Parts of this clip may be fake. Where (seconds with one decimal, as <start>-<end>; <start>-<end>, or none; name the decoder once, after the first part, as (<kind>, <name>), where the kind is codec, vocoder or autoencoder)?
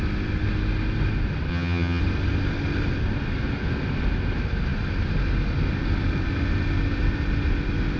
1.5-2.0 (vocoder, HiFi-GAN)